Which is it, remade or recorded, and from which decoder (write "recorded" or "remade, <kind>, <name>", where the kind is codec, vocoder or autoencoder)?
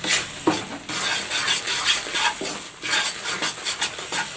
recorded